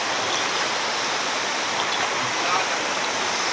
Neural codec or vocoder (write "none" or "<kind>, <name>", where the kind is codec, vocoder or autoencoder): none